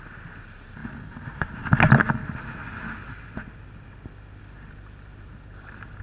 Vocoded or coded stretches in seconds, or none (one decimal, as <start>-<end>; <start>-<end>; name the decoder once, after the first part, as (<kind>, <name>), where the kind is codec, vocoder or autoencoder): none